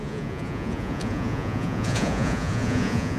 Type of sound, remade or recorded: remade